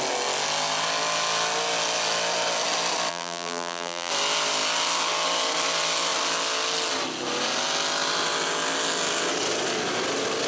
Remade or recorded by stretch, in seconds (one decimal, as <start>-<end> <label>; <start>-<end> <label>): 0.0-3.1 recorded; 3.1-4.1 remade; 4.1-10.5 recorded